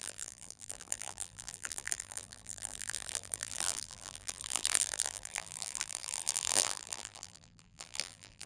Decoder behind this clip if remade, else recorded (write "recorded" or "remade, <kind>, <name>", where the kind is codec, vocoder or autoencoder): remade, vocoder, BigVGAN v2